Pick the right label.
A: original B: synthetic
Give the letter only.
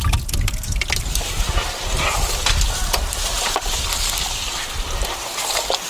A